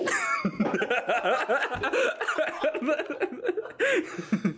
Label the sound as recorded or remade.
recorded